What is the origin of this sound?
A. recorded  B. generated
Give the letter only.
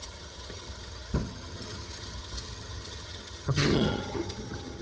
B